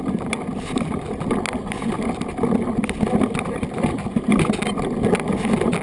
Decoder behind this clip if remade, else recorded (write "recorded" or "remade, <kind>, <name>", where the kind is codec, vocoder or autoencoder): recorded